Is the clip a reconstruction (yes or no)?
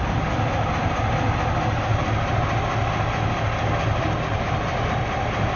no